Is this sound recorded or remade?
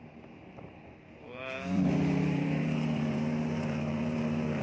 remade